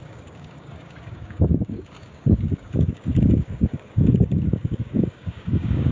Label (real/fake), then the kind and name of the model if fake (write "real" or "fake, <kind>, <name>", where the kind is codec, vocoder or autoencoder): fake, codec, DAC